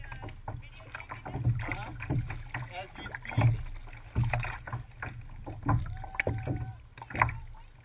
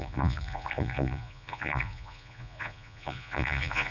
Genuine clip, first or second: first